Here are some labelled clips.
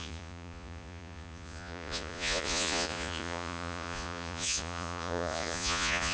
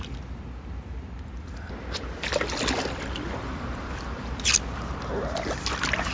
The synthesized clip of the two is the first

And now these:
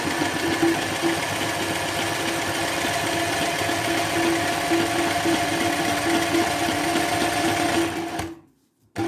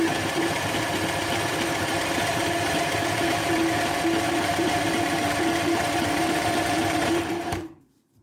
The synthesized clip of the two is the second